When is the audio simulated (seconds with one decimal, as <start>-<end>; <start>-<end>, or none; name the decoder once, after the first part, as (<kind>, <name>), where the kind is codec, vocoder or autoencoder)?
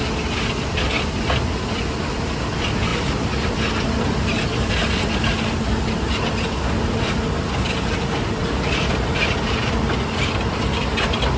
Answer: none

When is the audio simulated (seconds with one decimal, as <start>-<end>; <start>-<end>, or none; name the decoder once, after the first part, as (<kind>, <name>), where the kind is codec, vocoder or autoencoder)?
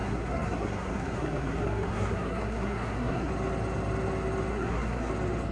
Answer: 0.0-3.3 (codec, SNAC); 4.5-5.1